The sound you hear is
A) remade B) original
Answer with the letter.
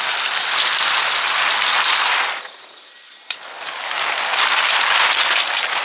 B